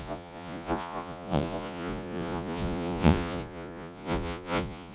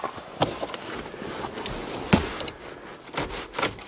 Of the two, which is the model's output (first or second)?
first